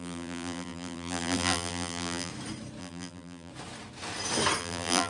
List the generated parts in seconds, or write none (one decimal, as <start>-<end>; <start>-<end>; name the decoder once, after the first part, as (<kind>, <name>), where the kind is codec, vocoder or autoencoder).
0.0-2.3 (vocoder, BigVGAN v2); 2.8-3.5; 4.6-5.1